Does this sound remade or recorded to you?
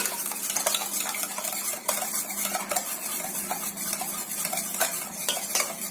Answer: recorded